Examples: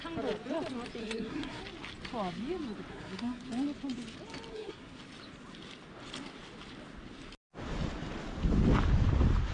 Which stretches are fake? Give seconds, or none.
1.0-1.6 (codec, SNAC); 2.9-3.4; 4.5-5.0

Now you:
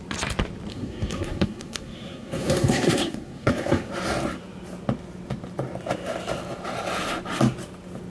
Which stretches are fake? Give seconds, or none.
0.7-3.9 (codec, SNAC)

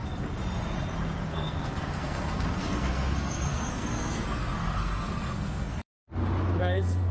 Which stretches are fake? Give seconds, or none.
1.3-6.1 (codec, SNAC); 6.6-7.1